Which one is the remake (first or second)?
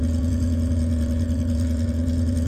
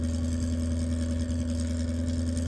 first